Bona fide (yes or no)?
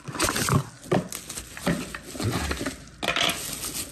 yes